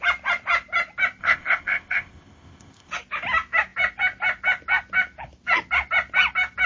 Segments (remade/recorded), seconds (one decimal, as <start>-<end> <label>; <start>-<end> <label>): 0.0-1.2 recorded; 1.2-2.9 remade; 2.9-6.7 recorded